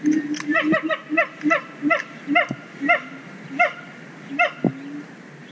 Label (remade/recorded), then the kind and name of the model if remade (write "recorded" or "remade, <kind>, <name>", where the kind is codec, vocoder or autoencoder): recorded